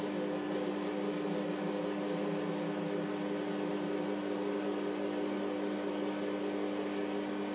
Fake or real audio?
real